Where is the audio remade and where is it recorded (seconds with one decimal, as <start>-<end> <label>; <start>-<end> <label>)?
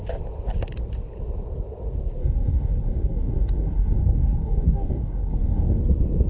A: 0.0-2.2 recorded; 2.2-5.8 remade; 5.8-6.3 recorded